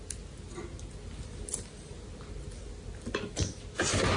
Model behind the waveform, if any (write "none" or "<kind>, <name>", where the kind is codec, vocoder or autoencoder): none